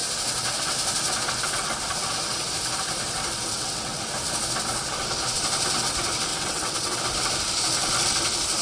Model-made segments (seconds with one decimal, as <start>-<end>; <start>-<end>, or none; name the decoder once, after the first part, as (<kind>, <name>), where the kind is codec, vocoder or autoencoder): 3.5-4.0 (vocoder, WaveNeXt); 6.3-7.0